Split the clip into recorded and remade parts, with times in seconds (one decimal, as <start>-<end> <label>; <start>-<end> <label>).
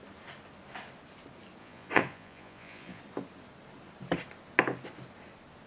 0.0-1.6 recorded; 1.6-3.0 remade; 3.0-5.7 recorded